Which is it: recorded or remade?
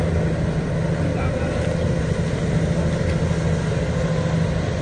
recorded